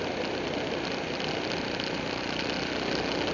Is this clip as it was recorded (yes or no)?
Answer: yes